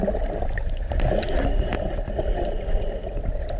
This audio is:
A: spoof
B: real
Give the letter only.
B